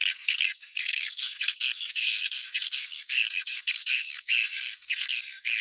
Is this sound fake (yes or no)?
yes